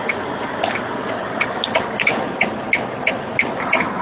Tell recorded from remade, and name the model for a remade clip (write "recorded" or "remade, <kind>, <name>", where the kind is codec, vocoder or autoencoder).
recorded